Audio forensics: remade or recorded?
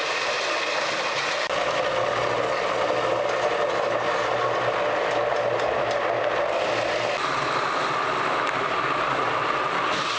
recorded